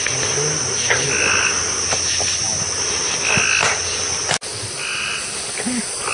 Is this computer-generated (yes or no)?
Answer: no